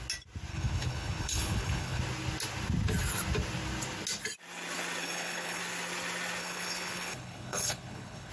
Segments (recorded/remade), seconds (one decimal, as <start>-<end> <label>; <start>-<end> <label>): 0.0-0.5 recorded; 0.5-2.0 remade; 2.0-5.0 recorded; 5.0-5.6 remade; 5.6-6.4 recorded; 6.4-8.3 remade